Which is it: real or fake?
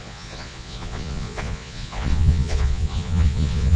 fake